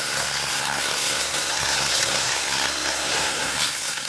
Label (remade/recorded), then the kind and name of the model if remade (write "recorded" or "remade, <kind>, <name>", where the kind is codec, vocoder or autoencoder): remade, codec, SNAC